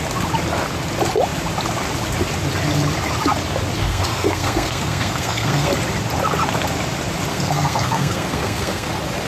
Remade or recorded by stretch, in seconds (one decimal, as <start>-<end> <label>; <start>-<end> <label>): 0.0-3.8 recorded; 3.8-5.7 remade; 5.7-7.3 recorded; 7.3-8.9 remade; 8.9-9.3 recorded